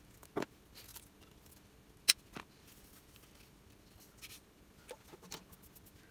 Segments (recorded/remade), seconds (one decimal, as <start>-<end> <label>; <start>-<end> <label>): 0.0-6.1 recorded